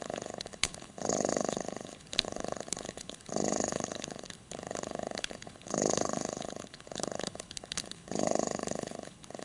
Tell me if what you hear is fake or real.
fake